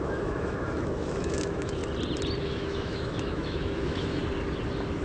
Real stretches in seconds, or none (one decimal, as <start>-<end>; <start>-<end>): 1.8-2.4; 4.2-5.0